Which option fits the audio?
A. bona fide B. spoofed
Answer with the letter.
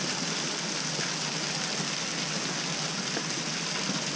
A